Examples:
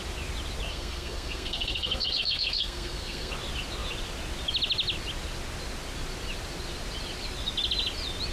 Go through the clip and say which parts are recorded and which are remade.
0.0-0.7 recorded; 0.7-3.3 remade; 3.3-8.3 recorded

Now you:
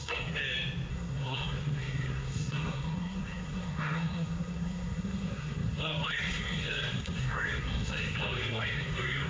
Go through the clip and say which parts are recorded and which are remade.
0.0-0.4 remade; 0.4-0.9 recorded; 0.9-9.3 remade

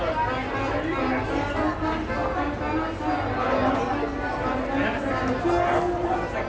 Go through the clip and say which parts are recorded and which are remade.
0.0-6.5 recorded